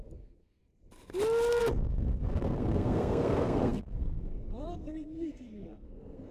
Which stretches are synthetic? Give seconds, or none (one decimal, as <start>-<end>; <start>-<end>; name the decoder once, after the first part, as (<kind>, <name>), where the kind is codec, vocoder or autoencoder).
0.0-0.6 (codec, SNAC); 1.6-6.3